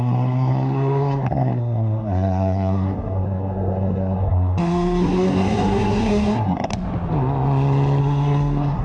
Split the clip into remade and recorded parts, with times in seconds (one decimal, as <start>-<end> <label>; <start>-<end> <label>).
0.0-6.7 remade; 6.7-8.0 recorded; 8.0-8.8 remade